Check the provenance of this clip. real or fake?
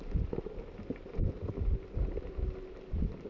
real